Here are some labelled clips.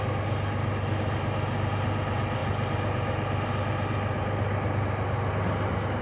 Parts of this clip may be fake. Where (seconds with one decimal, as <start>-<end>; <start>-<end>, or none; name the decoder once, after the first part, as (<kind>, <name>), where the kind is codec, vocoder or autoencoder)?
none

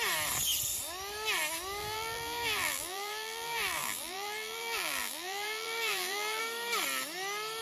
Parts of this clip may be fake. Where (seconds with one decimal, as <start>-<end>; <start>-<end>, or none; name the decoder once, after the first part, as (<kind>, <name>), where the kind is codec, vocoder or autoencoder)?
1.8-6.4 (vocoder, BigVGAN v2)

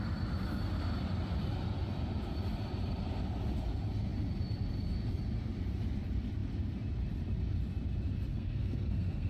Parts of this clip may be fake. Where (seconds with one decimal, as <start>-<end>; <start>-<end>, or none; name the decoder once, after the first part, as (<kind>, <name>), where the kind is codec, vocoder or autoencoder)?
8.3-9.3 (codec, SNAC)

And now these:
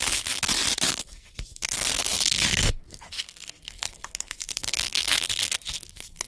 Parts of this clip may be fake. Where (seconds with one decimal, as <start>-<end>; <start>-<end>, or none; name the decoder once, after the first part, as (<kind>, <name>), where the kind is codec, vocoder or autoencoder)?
0.0-0.5 (codec, SNAC); 1.0-6.3

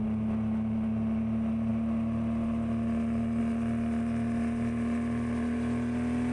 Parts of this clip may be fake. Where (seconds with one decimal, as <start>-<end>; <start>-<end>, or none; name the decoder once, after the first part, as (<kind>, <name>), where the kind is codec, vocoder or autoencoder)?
none

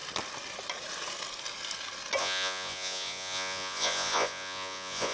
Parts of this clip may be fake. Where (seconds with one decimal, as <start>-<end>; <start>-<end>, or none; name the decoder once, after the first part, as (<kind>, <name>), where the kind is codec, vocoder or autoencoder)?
2.2-5.1 (vocoder, Vocos)

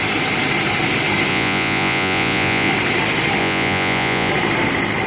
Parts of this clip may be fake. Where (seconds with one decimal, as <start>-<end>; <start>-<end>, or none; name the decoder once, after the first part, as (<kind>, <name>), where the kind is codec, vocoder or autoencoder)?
1.3-2.7 (vocoder, Vocos); 3.4-4.3